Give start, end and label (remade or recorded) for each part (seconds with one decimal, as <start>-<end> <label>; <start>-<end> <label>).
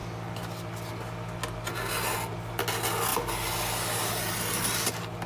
0.0-5.3 recorded